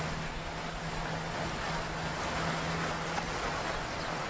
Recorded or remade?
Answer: recorded